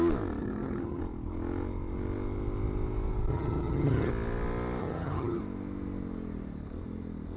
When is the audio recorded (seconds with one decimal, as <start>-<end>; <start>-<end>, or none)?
0.0-0.4; 1.0-3.3; 4.1-4.8; 5.4-7.4